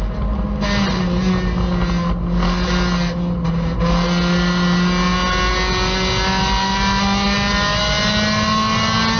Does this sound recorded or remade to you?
recorded